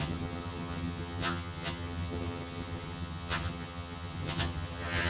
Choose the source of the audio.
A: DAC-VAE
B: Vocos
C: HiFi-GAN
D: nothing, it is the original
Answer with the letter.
C